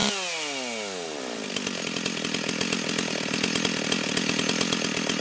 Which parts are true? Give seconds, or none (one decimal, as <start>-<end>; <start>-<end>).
0.0-5.2